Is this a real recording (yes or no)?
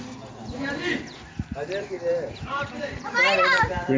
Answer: no